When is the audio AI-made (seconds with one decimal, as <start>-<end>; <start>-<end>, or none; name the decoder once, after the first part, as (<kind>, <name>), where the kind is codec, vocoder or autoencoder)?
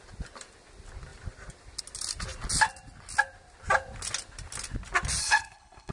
5.2-5.9 (codec, HILCodec)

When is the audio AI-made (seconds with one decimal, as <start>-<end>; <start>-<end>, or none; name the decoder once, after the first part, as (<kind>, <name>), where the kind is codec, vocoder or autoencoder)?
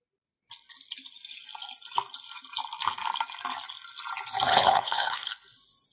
4.5-5.3 (codec, HILCodec)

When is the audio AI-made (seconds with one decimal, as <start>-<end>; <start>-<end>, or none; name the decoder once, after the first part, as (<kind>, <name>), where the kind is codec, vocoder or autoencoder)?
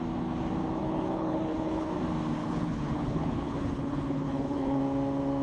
0.8-1.9 (codec, HILCodec); 2.4-4.8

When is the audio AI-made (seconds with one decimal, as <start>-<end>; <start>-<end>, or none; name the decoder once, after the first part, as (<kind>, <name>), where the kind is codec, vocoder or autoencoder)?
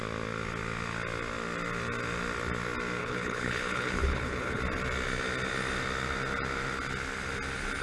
3.0-4.6 (codec, HILCodec)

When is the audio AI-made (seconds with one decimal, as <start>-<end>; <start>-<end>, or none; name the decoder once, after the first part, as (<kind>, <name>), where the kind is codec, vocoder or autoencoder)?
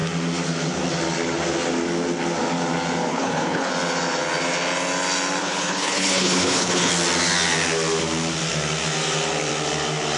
3.1-3.7 (codec, HILCodec); 5.4-6.9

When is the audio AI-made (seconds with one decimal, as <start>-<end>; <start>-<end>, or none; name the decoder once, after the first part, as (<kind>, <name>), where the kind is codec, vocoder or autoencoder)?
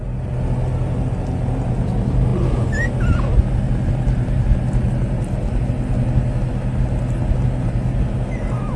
none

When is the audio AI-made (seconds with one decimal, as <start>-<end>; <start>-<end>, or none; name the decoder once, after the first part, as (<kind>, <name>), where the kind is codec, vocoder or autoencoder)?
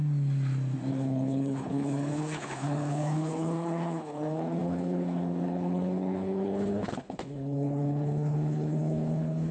0.9-9.5 (codec, HILCodec)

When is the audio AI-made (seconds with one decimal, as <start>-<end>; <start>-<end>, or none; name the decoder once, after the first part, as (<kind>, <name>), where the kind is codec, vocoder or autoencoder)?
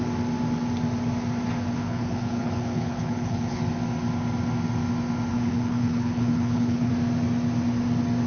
1.8-3.6 (codec, HILCodec); 5.3-6.9